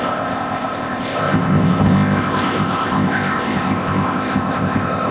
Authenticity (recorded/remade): remade